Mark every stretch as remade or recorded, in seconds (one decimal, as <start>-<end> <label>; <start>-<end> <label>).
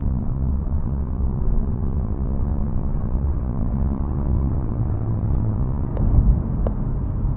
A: 0.0-5.9 remade; 5.9-7.4 recorded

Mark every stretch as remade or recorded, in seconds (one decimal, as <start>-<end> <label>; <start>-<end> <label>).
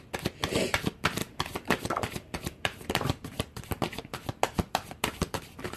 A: 0.0-1.2 recorded; 1.2-3.7 remade; 3.7-5.8 recorded